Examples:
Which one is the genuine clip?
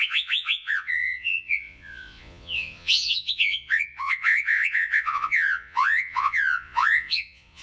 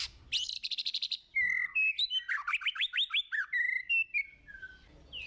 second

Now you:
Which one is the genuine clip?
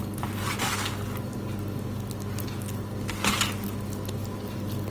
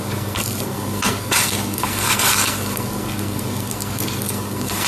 first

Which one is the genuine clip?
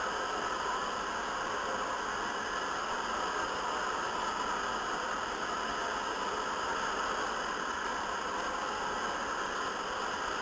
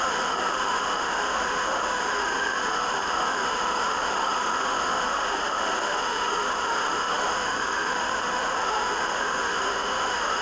first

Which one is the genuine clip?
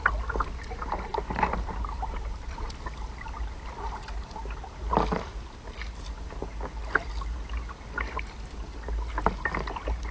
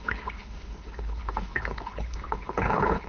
first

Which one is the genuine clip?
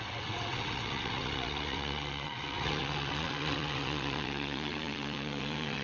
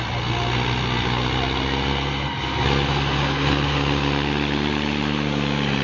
second